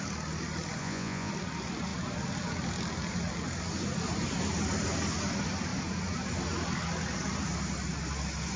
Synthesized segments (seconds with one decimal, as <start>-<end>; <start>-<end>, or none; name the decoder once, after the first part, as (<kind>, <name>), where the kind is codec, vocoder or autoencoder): 0.8-1.3 (vocoder, Vocos)